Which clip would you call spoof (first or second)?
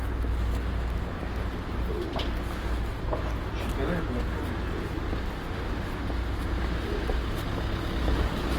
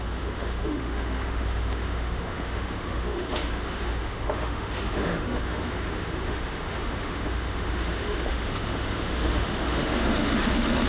second